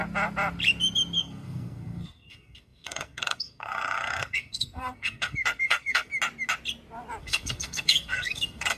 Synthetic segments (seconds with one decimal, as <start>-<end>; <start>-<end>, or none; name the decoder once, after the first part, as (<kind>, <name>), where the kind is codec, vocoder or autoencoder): 1.2-6.1 (codec, SNAC); 7.2-8.8